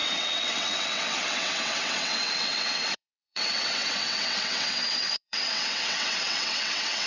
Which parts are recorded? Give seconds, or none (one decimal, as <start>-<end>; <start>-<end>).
none